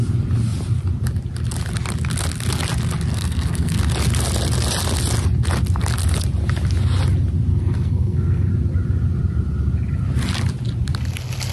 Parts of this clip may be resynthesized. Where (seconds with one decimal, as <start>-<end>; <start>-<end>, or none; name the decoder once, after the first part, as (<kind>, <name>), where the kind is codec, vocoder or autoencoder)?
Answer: 3.1-3.8 (codec, SNAC); 7.5-8.5